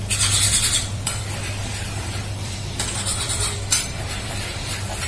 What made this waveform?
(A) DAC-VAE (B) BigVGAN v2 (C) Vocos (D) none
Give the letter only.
B